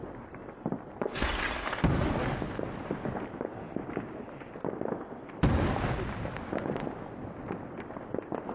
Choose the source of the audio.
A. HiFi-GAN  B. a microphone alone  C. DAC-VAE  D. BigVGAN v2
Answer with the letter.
B